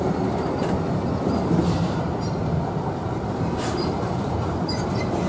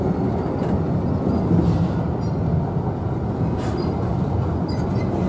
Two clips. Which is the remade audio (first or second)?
first